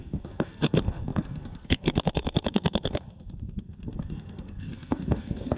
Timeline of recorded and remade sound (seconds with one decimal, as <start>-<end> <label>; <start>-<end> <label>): 0.0-5.6 remade